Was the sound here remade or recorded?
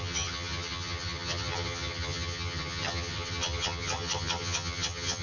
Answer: remade